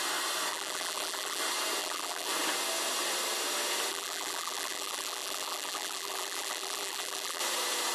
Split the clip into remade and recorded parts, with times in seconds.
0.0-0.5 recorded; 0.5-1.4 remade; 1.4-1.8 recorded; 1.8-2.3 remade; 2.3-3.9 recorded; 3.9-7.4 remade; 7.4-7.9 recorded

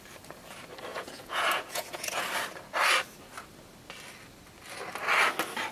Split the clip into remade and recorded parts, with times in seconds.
0.0-0.9 recorded; 0.9-2.2 remade; 2.2-5.7 recorded

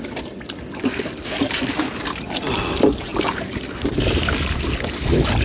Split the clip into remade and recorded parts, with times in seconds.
0.0-3.1 recorded; 3.1-5.4 remade

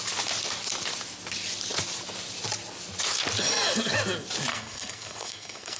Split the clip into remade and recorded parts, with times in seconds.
0.0-4.5 recorded; 4.5-5.8 remade

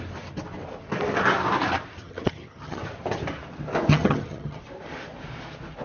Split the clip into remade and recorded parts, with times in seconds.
0.0-2.0 recorded; 2.0-2.8 remade; 2.8-3.9 recorded; 3.9-4.6 remade; 4.6-5.8 recorded

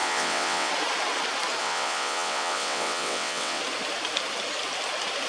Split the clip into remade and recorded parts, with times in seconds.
0.0-0.7 remade; 0.7-1.6 recorded; 1.6-3.6 remade; 3.6-5.3 recorded